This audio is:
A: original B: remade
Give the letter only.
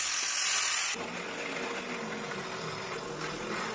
A